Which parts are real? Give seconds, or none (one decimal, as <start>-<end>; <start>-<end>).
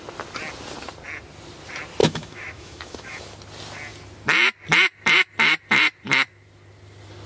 0.0-2.0; 3.2-7.3